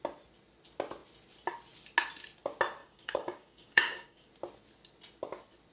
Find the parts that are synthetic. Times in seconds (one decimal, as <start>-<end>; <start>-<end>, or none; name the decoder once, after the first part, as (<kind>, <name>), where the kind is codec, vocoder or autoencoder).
2.8-4.3 (codec, DAC)